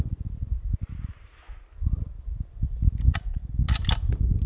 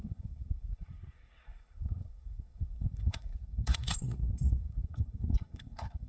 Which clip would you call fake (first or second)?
second